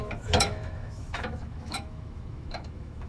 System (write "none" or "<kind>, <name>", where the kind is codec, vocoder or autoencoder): autoencoder, DAC-VAE